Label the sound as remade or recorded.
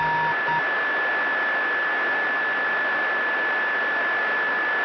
recorded